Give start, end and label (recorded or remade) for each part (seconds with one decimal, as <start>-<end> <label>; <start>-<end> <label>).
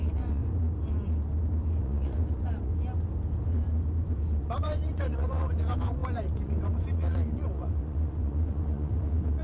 0.0-0.4 remade; 0.4-1.8 recorded; 1.8-2.7 remade; 2.7-4.4 recorded; 4.4-9.4 remade